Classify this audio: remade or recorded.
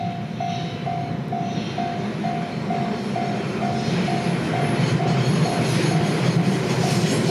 recorded